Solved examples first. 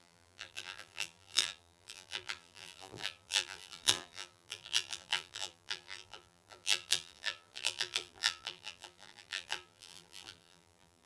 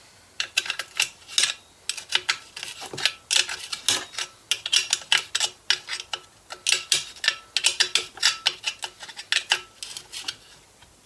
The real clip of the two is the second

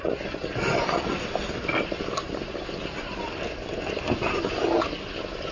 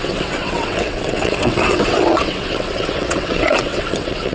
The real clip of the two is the first